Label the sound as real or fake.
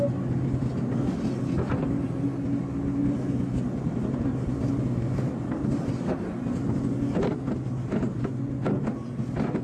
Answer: real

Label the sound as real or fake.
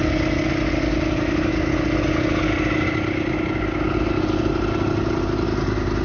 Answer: real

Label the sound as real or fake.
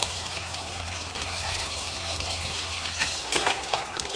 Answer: fake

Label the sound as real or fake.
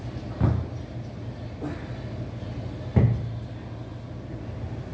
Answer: real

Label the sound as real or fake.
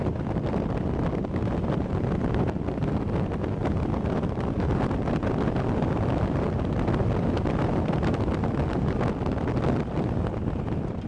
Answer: real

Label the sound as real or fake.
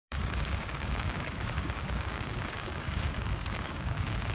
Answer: fake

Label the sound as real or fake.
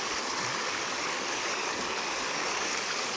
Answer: fake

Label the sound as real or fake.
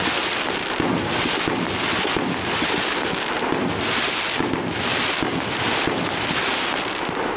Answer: real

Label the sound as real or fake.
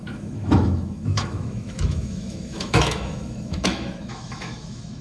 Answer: fake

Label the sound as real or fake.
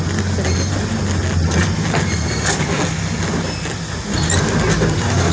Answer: real